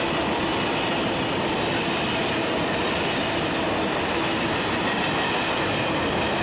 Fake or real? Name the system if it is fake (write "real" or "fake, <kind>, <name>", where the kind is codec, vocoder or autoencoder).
real